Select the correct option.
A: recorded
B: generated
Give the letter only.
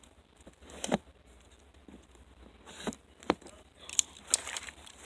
A